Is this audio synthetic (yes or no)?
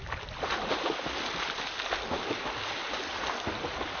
no